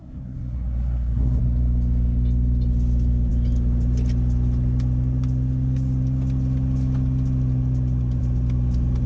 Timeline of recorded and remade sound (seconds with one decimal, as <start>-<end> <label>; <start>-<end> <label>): 0.0-1.4 remade; 1.4-9.1 recorded